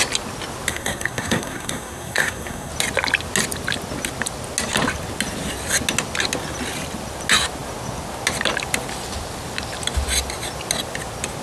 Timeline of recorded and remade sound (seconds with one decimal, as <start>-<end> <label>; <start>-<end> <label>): 0.0-0.7 recorded; 0.7-2.7 remade; 2.7-11.4 recorded